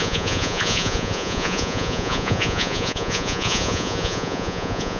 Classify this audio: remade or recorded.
remade